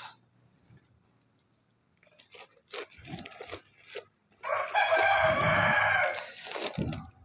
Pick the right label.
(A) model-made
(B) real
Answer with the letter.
B